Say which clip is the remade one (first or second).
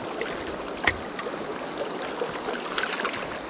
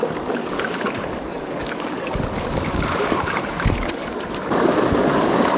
second